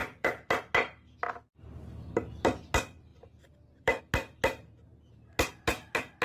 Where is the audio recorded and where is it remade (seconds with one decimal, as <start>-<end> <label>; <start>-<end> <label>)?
0.0-0.6 remade; 0.6-3.1 recorded; 3.1-4.0 remade; 4.0-6.2 recorded